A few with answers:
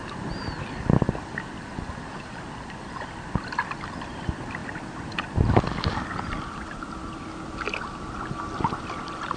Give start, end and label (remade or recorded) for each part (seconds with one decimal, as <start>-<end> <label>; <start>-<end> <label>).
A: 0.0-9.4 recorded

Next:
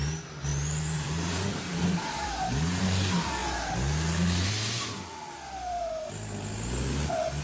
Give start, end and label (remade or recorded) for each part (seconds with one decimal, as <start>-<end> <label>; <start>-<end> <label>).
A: 0.0-0.5 recorded; 0.5-2.8 remade; 2.8-7.4 recorded

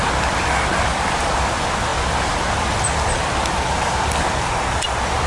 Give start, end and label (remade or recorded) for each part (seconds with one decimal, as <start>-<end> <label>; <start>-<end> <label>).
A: 0.0-5.3 recorded

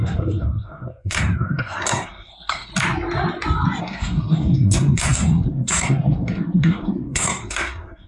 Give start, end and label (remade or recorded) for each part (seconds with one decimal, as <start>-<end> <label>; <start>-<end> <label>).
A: 0.0-2.7 remade; 2.7-3.8 recorded; 3.8-8.1 remade

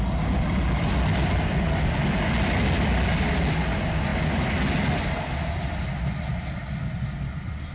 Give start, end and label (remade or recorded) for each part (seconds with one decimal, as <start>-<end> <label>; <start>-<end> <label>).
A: 0.0-7.7 recorded